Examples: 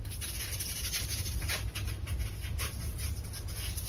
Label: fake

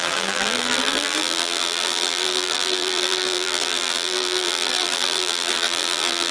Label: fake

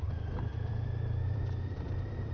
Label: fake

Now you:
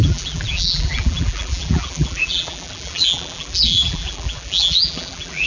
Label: fake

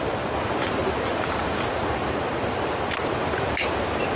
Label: fake